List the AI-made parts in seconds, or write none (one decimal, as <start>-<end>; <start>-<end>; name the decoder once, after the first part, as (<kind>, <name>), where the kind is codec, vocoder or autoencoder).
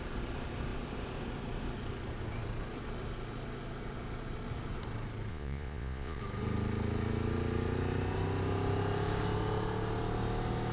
5.3-6.2 (vocoder, Vocos)